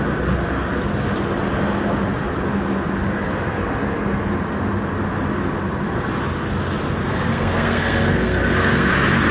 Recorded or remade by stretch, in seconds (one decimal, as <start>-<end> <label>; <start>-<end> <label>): 0.0-7.0 recorded; 7.0-8.9 remade; 8.9-9.3 recorded